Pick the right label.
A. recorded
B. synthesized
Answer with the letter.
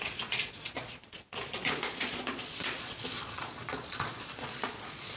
B